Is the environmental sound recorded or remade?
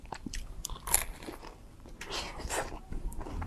remade